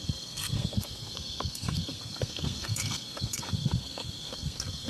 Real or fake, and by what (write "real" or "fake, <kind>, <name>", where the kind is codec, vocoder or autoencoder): fake, codec, SNAC